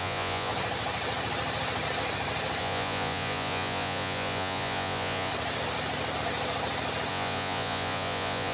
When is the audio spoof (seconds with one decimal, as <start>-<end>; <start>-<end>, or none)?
0.0-0.5; 2.6-5.3; 7.1-8.5